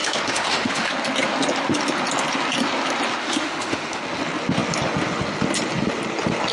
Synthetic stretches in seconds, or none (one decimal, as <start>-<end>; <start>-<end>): 0.0-0.9; 3.2-4.0